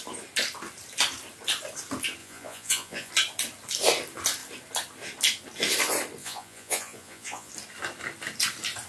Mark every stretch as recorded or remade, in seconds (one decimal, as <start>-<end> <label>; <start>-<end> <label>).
0.0-2.2 recorded; 2.2-3.1 remade; 3.1-6.2 recorded; 6.2-7.5 remade; 7.5-8.9 recorded